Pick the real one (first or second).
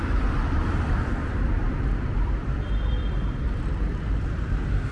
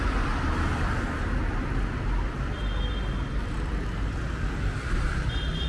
second